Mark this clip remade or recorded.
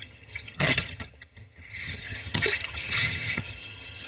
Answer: remade